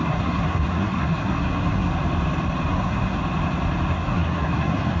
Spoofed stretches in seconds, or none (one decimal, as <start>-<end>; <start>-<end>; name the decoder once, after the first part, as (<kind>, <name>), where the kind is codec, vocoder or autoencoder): 0.0-1.9 (codec, SNAC); 2.7-3.2; 3.9-5.0